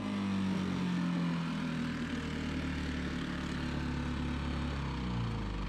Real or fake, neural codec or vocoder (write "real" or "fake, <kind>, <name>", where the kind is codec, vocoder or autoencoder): real